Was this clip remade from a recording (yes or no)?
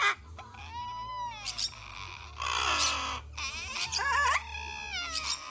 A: no